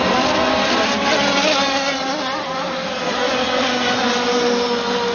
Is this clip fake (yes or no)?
no